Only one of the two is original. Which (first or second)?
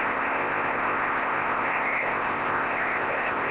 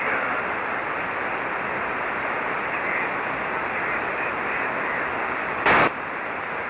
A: second